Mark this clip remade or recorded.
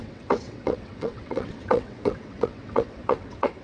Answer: remade